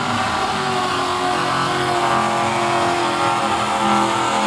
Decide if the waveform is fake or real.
real